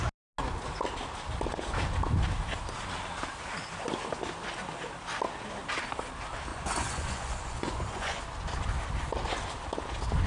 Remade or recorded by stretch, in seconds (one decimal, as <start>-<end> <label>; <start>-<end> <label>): 0.0-6.5 recorded; 6.5-8.2 remade; 8.2-10.3 recorded